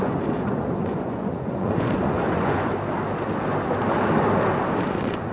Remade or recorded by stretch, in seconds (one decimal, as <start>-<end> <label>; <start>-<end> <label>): 0.0-2.7 remade; 2.7-4.8 recorded; 4.8-5.3 remade